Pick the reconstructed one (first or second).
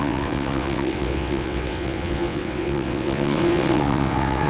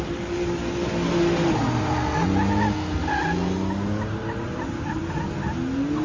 first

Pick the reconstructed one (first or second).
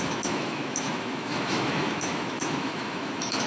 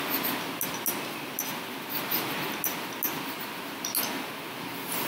first